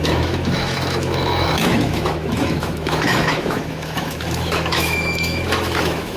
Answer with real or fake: fake